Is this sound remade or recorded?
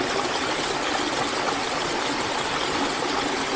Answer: recorded